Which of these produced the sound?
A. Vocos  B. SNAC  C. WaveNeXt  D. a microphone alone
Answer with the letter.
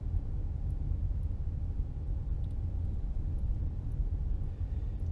D